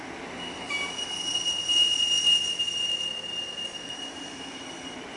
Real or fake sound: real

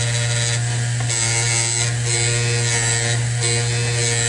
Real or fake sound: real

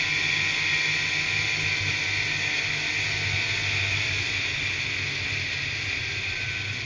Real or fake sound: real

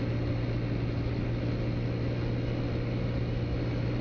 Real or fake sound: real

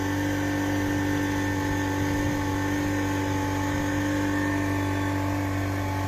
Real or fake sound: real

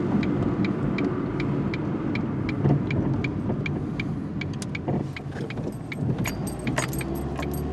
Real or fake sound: real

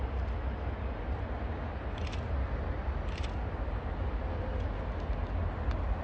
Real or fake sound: real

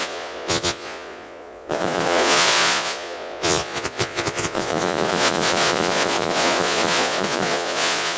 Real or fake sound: fake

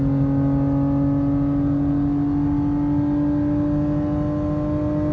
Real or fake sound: real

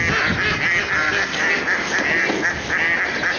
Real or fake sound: real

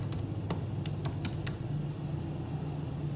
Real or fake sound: real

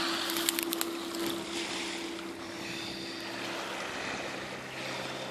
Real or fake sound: real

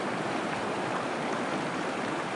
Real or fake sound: real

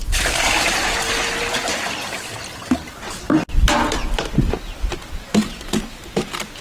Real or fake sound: real